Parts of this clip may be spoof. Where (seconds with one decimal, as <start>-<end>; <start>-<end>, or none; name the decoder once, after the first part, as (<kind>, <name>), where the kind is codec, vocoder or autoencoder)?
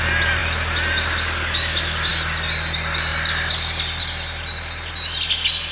none